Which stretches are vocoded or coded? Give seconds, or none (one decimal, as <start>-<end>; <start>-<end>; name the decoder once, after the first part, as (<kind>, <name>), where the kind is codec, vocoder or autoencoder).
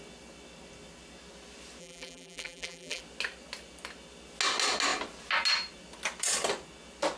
1.8-3.0 (vocoder, BigVGAN v2)